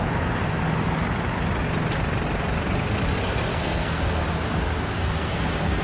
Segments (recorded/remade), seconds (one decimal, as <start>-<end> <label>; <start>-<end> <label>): 0.0-3.5 recorded; 3.5-4.2 remade; 4.2-5.0 recorded; 5.0-5.8 remade

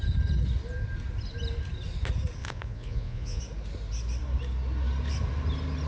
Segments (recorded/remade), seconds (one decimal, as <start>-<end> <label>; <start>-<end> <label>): 0.0-2.4 recorded; 2.4-3.4 remade; 3.4-5.9 recorded

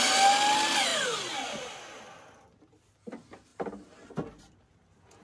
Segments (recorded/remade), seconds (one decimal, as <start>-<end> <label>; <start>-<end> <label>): 0.0-5.2 recorded

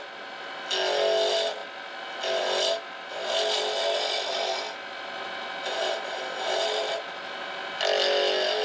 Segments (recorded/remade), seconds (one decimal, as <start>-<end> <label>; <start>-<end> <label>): 0.0-8.6 recorded

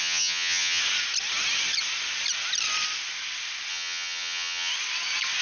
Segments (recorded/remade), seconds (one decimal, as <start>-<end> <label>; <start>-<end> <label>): 0.0-0.8 remade; 0.8-3.7 recorded; 3.7-4.7 remade; 4.7-5.4 recorded

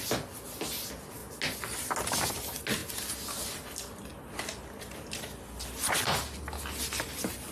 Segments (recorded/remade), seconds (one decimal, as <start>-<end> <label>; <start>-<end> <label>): 0.0-7.5 recorded

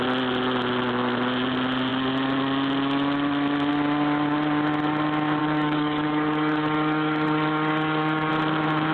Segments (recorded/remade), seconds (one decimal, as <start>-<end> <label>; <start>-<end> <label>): 0.0-5.4 recorded; 5.4-8.3 remade; 8.3-8.9 recorded

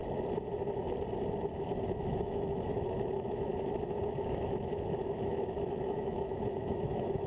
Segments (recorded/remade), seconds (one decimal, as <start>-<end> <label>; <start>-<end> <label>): 0.0-1.9 recorded; 1.9-3.5 remade; 3.5-4.0 recorded; 4.0-7.3 remade